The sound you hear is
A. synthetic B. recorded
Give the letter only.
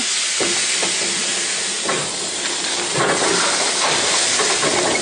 B